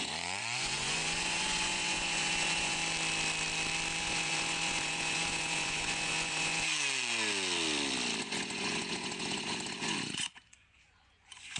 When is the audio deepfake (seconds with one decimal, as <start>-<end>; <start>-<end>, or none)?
0.0-2.8; 4.0-7.1; 8.2-11.6